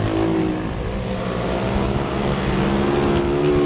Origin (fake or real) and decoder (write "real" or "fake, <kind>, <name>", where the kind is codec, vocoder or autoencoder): real